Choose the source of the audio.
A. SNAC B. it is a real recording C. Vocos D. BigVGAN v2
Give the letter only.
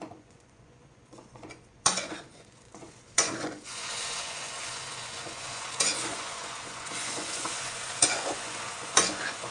C